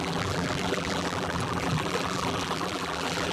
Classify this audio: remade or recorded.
remade